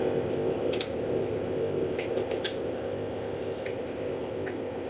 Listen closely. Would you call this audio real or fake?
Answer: fake